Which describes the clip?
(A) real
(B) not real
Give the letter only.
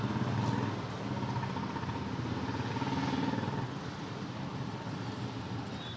A